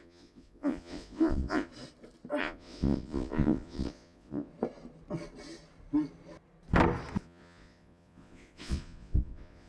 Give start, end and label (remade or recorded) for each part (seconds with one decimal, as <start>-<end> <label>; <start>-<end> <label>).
0.0-1.7 remade; 1.7-2.4 recorded; 2.4-4.5 remade; 4.5-7.2 recorded; 7.2-9.7 remade